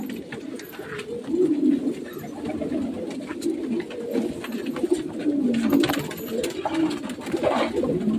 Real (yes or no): yes